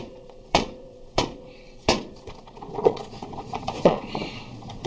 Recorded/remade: remade